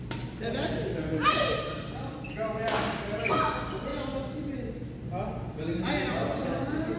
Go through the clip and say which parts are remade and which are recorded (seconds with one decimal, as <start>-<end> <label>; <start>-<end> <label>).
0.0-7.0 recorded